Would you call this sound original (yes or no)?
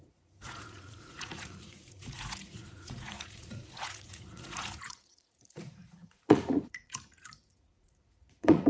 no